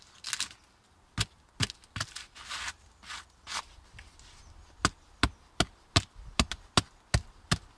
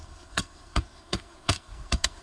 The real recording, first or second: first